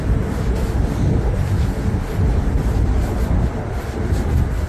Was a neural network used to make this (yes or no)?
no